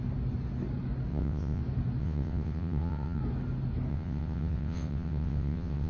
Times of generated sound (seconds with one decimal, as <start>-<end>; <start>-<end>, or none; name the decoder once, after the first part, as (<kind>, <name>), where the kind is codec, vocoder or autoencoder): 1.1-1.6 (vocoder, WaveNeXt); 2.0-3.2; 3.9-5.9